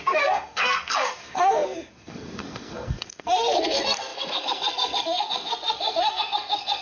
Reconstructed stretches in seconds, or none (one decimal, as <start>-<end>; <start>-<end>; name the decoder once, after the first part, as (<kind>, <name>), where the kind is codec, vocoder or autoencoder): 0.0-6.8 (codec, SNAC)